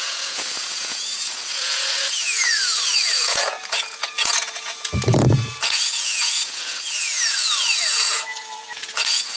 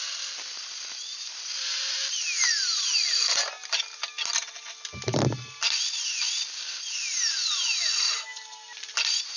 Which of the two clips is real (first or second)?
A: second